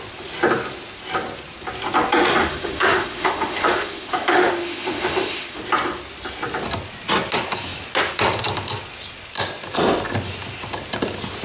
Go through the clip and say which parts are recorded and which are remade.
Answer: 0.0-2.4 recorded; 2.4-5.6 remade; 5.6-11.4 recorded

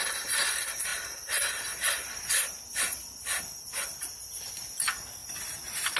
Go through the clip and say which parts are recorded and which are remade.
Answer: 0.0-6.0 recorded

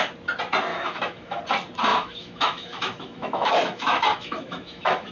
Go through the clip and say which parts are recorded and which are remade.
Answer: 0.0-0.7 recorded; 0.7-1.4 remade; 1.4-1.9 recorded; 1.9-5.1 remade

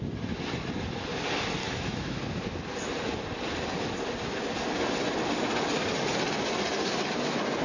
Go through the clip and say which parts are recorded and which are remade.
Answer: 0.0-1.6 recorded; 1.6-2.2 remade; 2.2-7.6 recorded